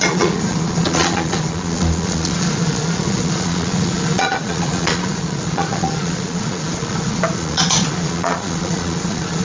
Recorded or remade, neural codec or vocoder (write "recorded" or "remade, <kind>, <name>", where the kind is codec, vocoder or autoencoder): remade, vocoder, Vocos